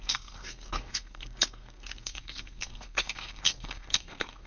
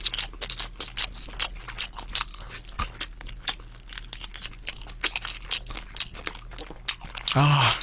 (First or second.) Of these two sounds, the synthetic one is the first